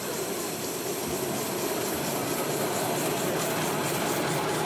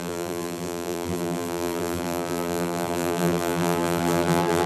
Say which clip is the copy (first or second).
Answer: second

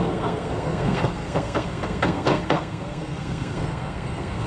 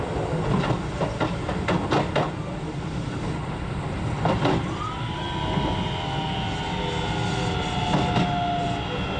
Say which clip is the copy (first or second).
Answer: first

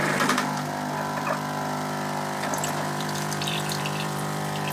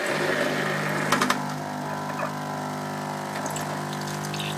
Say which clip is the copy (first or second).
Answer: first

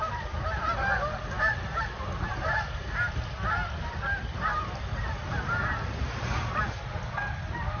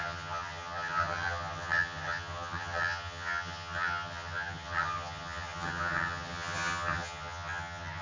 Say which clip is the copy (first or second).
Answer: second